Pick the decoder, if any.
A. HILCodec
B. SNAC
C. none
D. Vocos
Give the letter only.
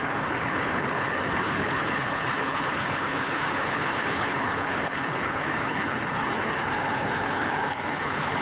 A